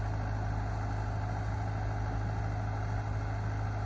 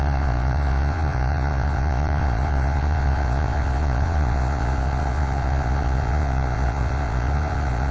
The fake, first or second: second